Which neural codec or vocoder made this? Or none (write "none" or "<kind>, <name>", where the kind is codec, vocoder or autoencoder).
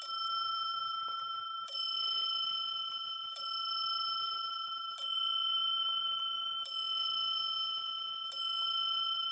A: vocoder, BigVGAN v2